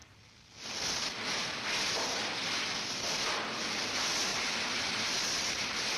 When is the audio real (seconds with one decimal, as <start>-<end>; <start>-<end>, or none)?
0.0-4.3; 5.0-6.0